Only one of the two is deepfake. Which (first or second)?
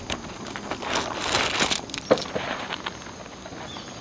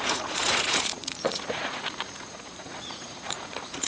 second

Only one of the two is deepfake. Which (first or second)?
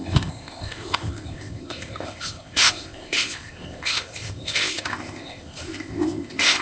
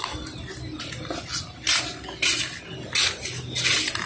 first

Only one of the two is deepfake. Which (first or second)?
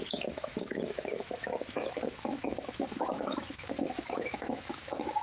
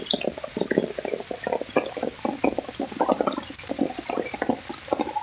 first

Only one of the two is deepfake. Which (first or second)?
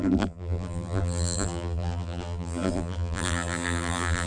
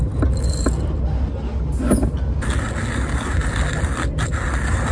first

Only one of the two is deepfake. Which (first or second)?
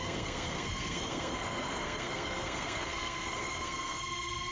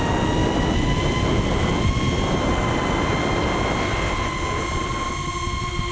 first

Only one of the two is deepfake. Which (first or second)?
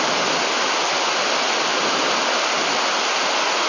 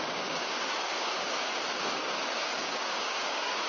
second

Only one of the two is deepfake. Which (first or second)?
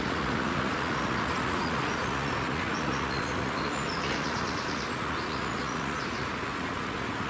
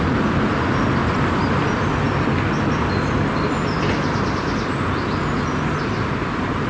first